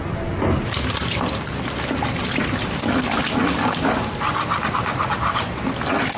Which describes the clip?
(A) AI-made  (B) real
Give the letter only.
B